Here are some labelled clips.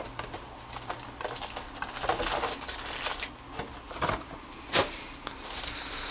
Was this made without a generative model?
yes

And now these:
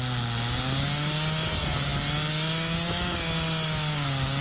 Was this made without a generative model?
yes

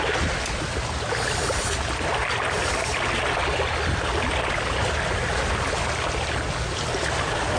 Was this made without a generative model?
yes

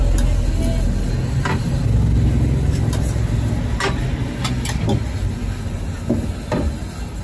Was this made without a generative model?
yes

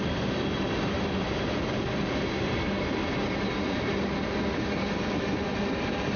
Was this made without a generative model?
yes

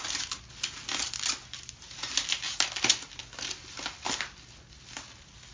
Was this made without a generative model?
yes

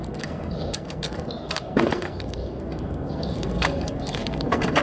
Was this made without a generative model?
no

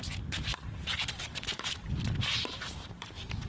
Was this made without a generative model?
no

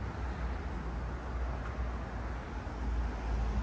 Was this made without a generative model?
yes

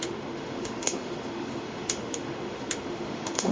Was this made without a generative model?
no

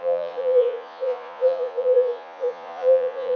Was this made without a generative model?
no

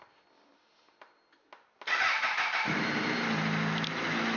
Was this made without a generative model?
yes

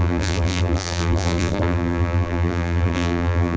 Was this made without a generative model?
no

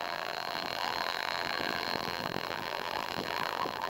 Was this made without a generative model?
no